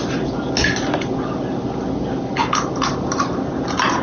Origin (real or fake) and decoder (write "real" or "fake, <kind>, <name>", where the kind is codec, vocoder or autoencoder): real